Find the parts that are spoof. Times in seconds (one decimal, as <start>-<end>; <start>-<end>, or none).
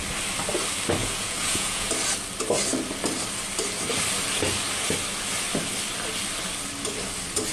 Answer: 1.0-1.9